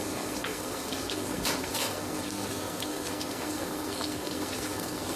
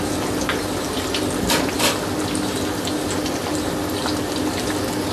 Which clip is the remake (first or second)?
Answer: first